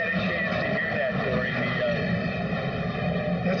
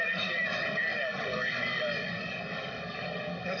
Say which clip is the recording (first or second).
first